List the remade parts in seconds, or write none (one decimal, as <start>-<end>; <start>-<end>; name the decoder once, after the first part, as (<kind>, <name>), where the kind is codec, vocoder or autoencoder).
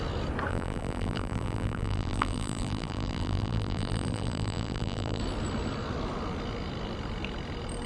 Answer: 0.5-5.2 (vocoder, BigVGAN v2)